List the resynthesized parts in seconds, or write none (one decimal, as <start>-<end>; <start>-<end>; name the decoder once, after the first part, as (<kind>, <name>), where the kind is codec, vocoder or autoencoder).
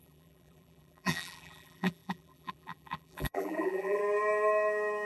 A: 0.0-4.0 (vocoder, BigVGAN v2)